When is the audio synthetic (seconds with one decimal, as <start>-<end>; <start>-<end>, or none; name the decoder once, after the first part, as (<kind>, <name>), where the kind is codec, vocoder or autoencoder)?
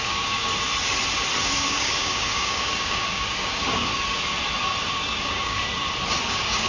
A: 0.0-0.5 (codec, DAC); 1.4-3.9; 4.9-5.6; 6.3-6.7